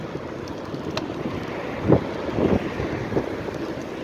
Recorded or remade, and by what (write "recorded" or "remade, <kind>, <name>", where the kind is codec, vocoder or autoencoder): recorded